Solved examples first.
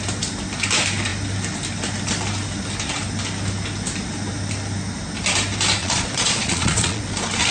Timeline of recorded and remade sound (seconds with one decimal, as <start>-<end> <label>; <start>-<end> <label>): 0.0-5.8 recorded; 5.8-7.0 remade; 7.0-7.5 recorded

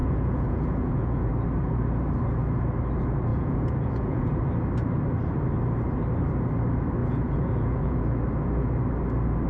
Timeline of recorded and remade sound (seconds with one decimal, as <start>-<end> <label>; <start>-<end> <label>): 0.0-1.3 remade; 1.3-3.3 recorded; 3.3-4.4 remade; 4.4-7.0 recorded; 7.0-8.0 remade; 8.0-9.5 recorded

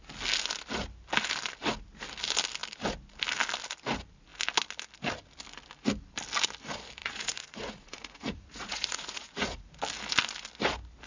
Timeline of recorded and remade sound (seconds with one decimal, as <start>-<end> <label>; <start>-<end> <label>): 0.0-7.0 recorded; 7.0-9.7 remade; 9.7-11.1 recorded

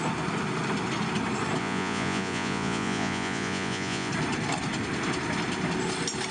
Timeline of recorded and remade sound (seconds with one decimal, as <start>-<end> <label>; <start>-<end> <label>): 0.0-1.6 recorded; 1.6-4.1 remade; 4.1-6.3 recorded

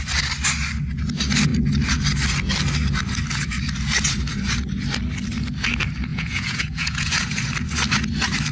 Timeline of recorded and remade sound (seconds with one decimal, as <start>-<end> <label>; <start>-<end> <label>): 0.0-6.1 recorded; 6.1-7.4 remade; 7.4-8.5 recorded